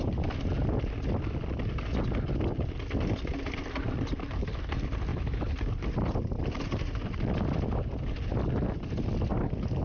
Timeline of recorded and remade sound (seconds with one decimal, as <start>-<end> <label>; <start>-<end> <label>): 0.0-5.1 recorded; 5.1-7.0 remade; 7.0-9.8 recorded